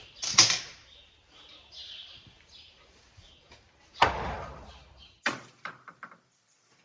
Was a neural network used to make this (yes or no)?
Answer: yes